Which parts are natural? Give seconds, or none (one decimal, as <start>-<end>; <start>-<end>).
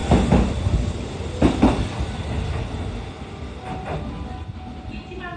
0.0-5.4